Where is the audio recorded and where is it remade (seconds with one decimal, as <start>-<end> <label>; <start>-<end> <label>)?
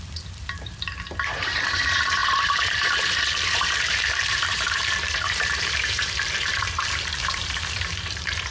0.0-8.5 remade